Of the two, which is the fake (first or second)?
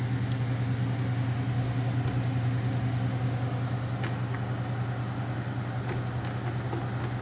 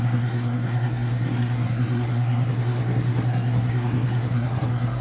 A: second